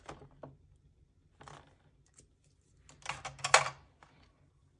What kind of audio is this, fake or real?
real